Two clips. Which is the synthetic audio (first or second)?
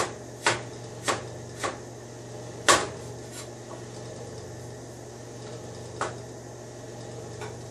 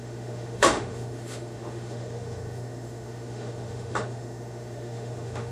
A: second